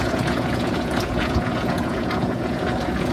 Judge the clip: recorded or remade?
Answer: remade